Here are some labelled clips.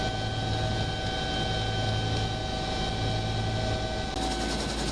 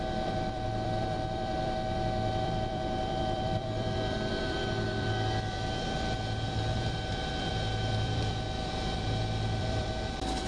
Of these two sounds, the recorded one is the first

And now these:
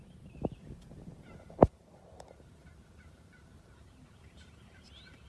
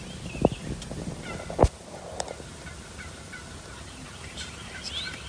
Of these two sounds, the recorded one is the second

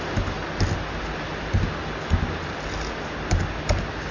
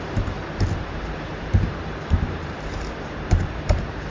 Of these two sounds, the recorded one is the first